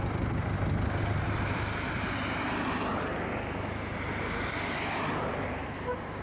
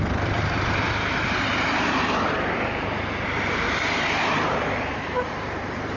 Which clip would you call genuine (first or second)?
first